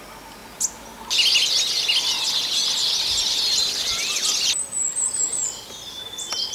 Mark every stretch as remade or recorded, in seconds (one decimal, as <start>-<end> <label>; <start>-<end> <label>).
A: 0.0-6.5 recorded